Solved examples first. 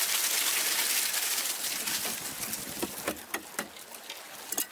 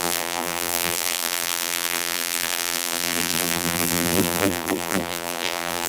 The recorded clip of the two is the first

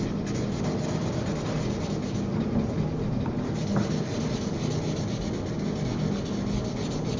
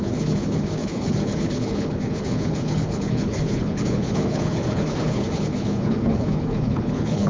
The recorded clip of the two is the first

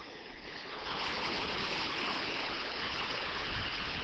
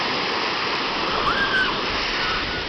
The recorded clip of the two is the second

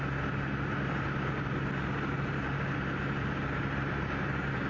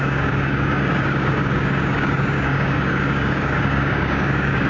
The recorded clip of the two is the first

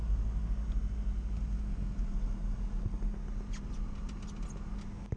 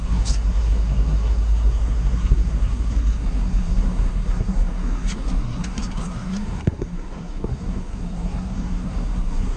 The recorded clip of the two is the first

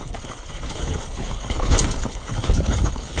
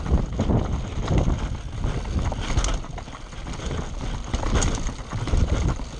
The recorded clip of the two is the second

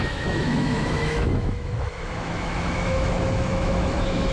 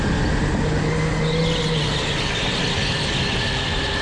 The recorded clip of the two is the second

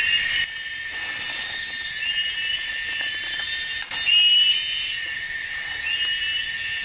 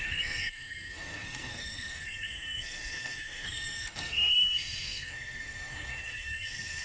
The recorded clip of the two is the first